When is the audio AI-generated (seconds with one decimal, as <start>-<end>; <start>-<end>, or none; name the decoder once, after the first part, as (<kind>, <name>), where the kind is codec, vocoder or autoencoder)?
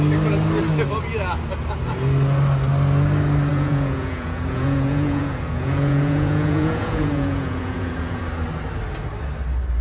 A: 3.5-8.3 (vocoder, Vocos)